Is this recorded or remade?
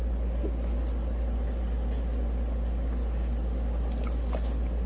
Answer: recorded